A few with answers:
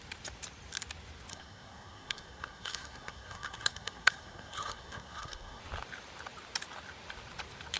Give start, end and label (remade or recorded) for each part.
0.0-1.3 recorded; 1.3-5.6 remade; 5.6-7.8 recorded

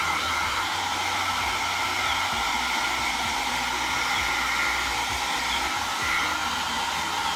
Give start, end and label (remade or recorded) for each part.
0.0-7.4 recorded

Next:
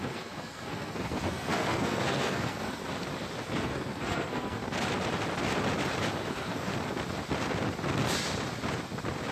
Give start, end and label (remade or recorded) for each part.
0.0-2.8 remade; 2.8-3.4 recorded; 3.4-4.6 remade; 4.6-6.3 recorded; 6.3-6.7 remade; 6.7-9.3 recorded

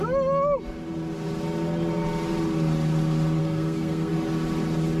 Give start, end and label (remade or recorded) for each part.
0.0-3.4 recorded; 3.4-4.1 remade; 4.1-5.0 recorded

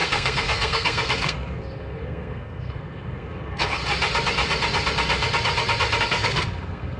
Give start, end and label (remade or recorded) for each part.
0.0-3.8 remade; 3.8-6.0 recorded; 6.0-7.0 remade

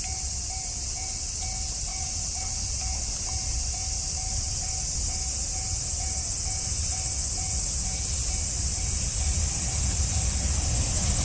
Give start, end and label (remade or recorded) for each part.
0.0-11.2 recorded